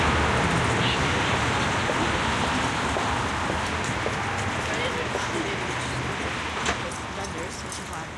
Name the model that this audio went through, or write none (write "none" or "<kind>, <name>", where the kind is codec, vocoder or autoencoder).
none